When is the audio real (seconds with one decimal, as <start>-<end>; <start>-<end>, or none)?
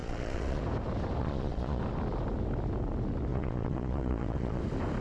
0.6-1.2; 1.8-3.3; 4.6-5.0